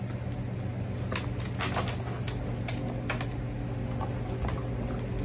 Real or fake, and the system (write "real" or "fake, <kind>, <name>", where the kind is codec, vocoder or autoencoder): real